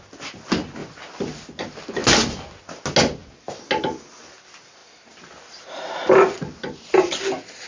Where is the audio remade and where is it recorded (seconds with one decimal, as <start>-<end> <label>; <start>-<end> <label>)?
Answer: 0.0-7.7 recorded